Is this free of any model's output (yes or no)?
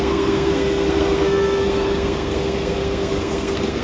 no